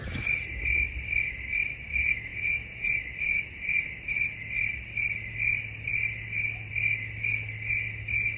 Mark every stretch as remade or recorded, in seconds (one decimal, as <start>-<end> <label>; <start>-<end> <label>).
0.0-2.3 recorded; 2.3-3.0 remade; 3.0-8.4 recorded